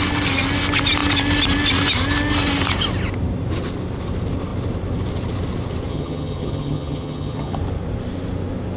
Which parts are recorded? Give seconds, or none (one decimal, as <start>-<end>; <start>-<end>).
0.0-5.9; 7.6-8.8